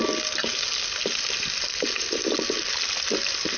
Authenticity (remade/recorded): recorded